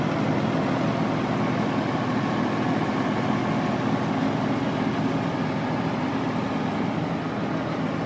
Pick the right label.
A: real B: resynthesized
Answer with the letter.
A